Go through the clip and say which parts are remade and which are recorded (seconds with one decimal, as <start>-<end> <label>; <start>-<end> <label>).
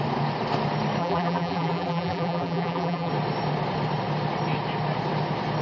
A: 0.0-1.0 recorded; 1.0-3.1 remade; 3.1-5.6 recorded